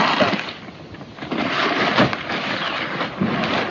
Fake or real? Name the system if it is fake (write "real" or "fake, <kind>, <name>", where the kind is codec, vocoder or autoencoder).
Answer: fake, vocoder, BigVGAN v2